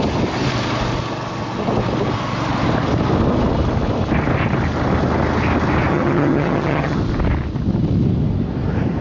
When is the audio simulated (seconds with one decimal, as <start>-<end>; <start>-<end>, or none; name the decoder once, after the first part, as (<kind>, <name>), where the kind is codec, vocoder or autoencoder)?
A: 5.9-7.0 (vocoder, HiFi-GAN)